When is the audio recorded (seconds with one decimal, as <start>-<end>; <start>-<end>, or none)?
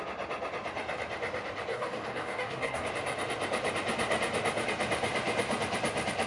0.0-1.7; 2.9-6.3